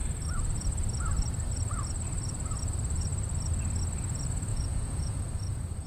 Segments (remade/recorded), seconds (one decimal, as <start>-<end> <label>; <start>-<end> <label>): 0.0-4.5 recorded; 4.5-5.2 remade; 5.2-5.9 recorded